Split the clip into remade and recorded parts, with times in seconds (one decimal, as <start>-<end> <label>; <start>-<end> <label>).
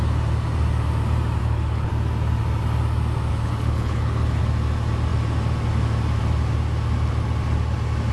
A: 0.0-1.4 recorded; 1.4-1.9 remade; 1.9-3.3 recorded; 3.3-4.4 remade; 4.4-8.1 recorded